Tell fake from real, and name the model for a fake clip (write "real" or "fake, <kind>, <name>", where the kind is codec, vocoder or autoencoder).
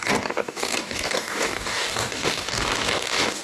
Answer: fake, codec, DAC